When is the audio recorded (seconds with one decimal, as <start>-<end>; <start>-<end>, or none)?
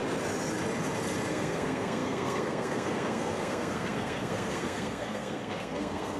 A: 0.0-1.3